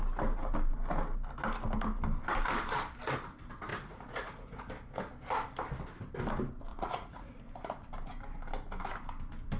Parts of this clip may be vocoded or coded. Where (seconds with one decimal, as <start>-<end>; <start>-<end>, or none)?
3.7-4.7; 6.7-7.4